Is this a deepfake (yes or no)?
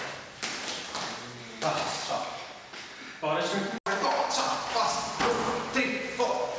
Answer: no